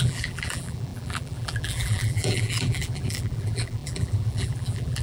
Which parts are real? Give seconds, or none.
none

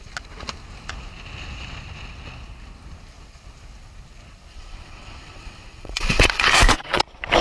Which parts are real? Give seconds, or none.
0.0-4.5; 7.0-7.4

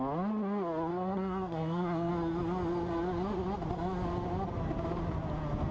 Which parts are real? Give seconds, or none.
0.0-0.9; 2.1-5.7

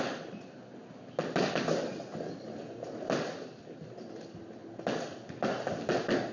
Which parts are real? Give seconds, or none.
0.0-6.3

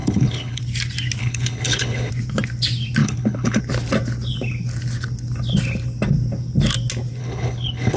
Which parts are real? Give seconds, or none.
0.6-1.2; 2.1-3.0; 3.6-7.2